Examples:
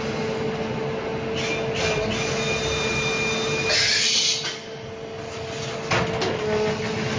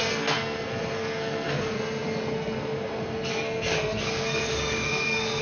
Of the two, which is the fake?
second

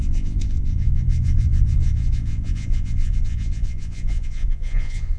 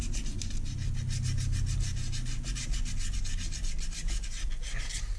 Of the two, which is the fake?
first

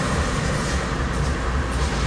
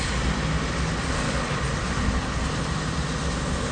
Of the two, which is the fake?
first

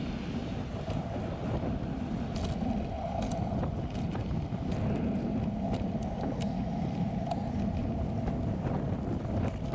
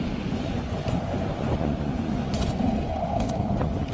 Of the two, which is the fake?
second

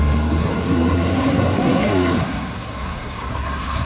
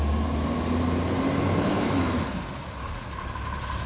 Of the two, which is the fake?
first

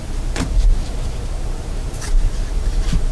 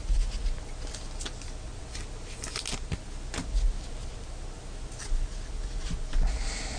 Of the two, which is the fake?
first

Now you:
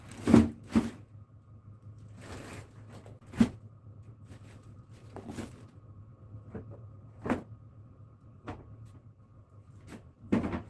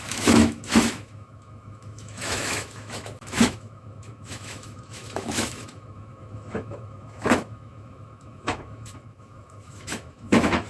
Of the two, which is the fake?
second